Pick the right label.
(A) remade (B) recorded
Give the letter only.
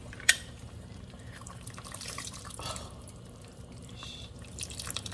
A